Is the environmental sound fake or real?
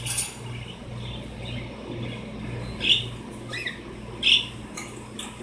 real